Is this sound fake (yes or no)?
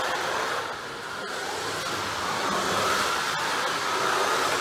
no